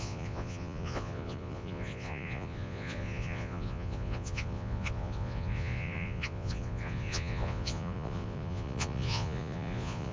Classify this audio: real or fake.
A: fake